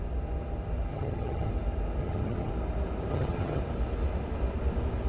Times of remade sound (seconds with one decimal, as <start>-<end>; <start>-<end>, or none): 0.9-1.5; 2.0-2.5; 3.1-3.6